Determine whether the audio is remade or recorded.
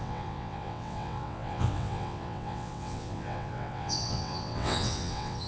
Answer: remade